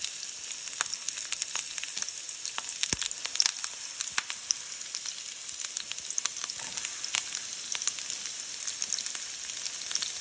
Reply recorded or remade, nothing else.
recorded